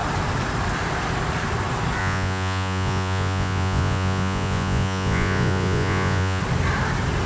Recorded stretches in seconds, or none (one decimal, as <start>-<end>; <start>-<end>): 0.0-2.0; 6.4-7.3